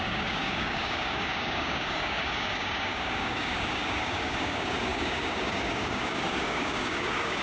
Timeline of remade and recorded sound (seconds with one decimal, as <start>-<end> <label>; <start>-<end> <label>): 0.0-7.4 remade